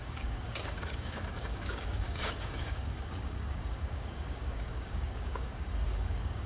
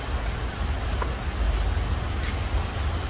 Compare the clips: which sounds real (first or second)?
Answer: second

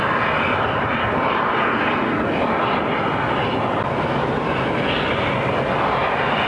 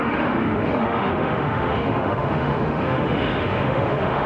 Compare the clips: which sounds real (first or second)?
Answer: first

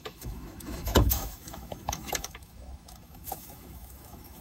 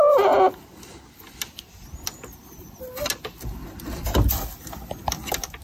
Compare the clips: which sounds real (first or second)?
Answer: second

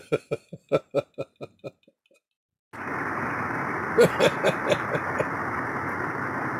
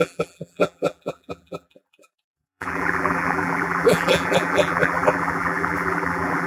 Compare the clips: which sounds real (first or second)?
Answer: first